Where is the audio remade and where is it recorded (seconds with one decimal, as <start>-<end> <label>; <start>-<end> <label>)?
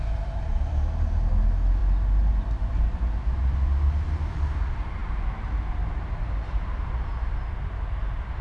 0.0-8.4 recorded